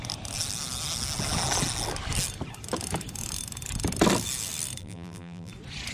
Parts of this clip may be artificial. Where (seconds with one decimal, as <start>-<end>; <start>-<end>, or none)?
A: 4.8-5.5